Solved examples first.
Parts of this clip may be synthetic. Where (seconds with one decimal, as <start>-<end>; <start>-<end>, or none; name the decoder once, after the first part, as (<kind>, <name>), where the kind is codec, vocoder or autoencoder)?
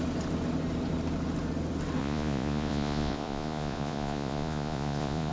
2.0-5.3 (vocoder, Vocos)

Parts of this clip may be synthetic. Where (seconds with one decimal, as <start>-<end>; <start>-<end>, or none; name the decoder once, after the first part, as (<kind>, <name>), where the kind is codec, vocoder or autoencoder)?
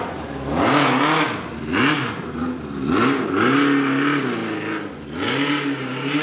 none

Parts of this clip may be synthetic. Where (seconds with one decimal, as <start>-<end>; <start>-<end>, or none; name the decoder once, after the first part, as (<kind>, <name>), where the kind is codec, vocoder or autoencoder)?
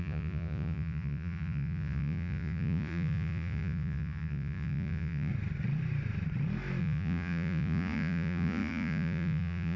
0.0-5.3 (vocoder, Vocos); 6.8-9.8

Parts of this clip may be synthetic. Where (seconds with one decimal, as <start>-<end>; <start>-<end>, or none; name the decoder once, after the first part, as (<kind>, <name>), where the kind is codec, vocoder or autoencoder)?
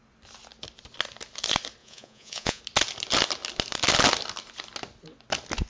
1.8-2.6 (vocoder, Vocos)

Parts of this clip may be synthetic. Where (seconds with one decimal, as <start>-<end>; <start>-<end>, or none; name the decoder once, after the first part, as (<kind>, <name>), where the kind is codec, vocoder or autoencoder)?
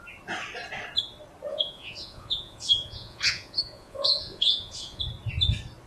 1.5-5.0 (vocoder, Vocos)